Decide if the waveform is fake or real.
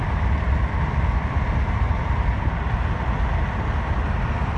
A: real